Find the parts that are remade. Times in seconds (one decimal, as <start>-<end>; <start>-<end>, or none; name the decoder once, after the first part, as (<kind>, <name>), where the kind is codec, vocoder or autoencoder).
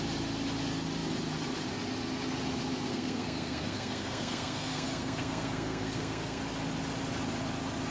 2.9-6.4 (codec, SNAC)